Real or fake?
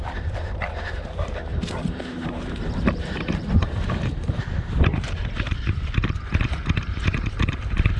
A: fake